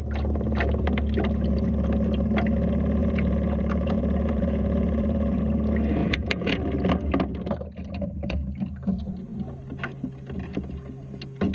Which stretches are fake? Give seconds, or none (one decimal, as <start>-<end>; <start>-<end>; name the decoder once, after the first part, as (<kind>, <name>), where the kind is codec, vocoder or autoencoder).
3.0-5.4 (vocoder, Vocos); 6.0-6.6